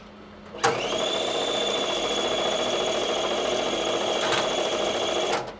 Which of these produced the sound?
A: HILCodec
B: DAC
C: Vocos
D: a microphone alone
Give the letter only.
D